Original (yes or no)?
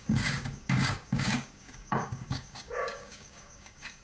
no